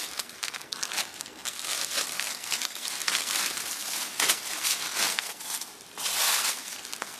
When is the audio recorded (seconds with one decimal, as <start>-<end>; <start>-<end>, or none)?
5.7-6.3